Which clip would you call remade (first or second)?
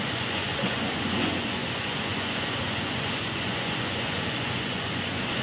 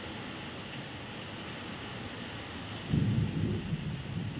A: first